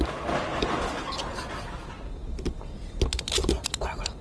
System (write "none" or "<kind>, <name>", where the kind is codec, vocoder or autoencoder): none